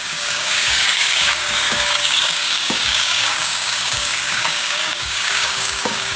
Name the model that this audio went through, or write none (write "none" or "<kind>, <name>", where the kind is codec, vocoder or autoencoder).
codec, DAC